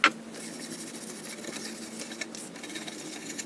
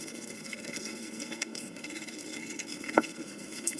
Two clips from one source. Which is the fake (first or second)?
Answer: second